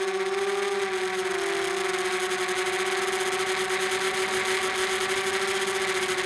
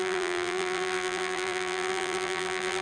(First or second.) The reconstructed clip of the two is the second